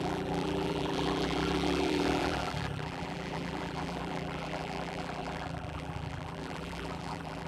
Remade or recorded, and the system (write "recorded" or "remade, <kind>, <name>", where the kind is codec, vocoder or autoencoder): remade, vocoder, BigVGAN v2